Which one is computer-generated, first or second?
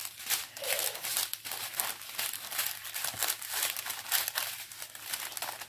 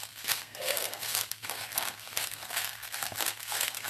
second